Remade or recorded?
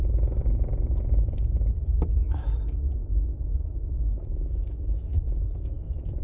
remade